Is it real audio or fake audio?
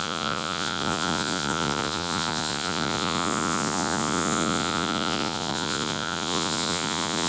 fake